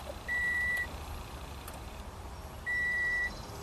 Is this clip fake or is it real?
fake